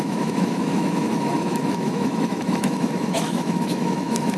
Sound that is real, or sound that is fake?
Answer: fake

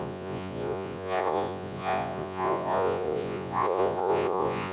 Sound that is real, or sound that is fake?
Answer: fake